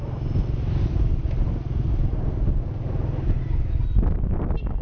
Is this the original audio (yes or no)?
yes